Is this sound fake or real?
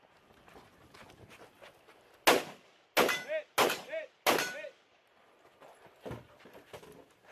real